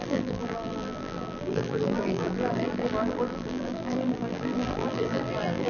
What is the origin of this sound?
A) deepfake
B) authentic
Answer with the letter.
A